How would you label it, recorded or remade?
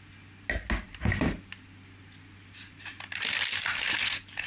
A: recorded